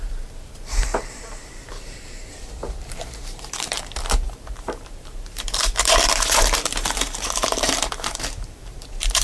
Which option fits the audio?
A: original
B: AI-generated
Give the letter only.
B